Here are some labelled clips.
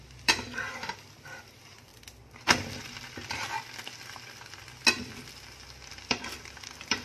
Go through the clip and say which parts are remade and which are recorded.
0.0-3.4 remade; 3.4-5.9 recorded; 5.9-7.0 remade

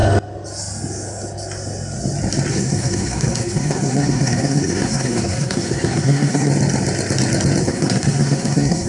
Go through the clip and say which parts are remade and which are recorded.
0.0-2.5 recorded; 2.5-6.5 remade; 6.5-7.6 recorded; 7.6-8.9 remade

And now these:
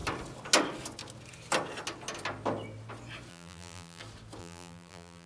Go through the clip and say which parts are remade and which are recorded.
0.0-3.3 recorded; 3.3-4.0 remade; 4.0-4.4 recorded; 4.4-5.3 remade

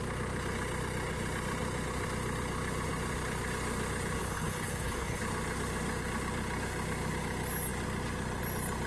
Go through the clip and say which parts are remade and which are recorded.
0.0-4.2 recorded; 4.2-5.2 remade; 5.2-8.9 recorded

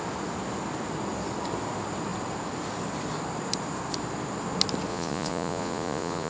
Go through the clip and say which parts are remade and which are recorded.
0.0-4.9 recorded; 4.9-6.3 remade